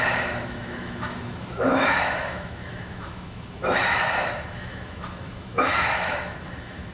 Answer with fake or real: fake